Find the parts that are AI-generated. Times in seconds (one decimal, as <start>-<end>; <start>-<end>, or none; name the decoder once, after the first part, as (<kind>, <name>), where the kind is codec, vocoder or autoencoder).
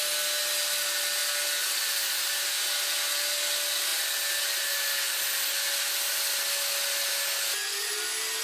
none